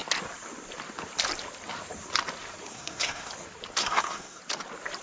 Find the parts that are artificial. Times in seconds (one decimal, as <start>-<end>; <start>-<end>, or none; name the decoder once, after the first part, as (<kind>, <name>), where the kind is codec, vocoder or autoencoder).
2.7-3.3 (codec, SNAC); 3.8-4.4